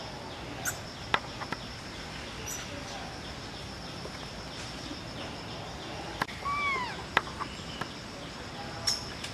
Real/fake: real